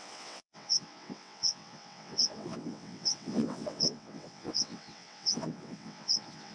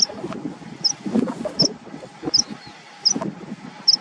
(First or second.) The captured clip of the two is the second